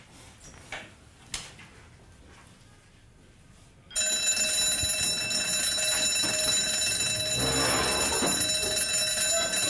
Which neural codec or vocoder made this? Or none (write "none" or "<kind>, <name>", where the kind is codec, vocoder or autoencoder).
none